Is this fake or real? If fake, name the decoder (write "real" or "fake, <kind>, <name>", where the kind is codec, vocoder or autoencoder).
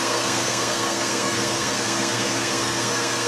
fake, codec, SNAC